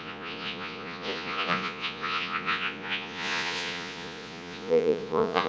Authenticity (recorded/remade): remade